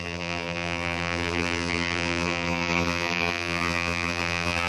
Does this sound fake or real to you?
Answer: fake